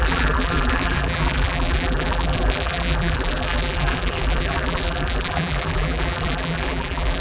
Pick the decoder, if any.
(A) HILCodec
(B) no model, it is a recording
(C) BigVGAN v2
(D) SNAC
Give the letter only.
C